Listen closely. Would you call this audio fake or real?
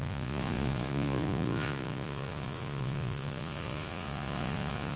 fake